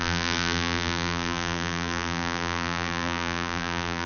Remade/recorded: remade